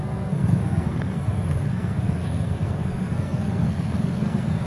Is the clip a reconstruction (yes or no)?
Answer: yes